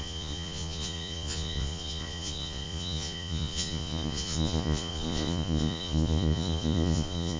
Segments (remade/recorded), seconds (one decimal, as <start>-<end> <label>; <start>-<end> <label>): 0.0-7.4 remade